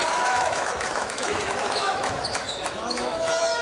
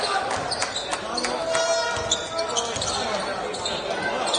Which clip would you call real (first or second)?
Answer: second